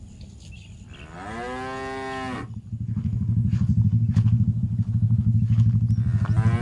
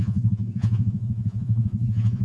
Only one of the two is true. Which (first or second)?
first